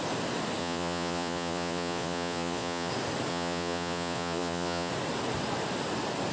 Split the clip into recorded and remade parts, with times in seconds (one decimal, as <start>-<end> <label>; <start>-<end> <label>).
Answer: 0.0-0.6 recorded; 0.6-2.9 remade; 2.9-3.3 recorded; 3.3-4.9 remade; 4.9-6.3 recorded